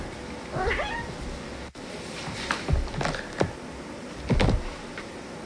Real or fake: real